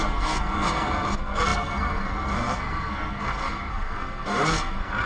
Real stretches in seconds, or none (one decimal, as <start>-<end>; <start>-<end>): none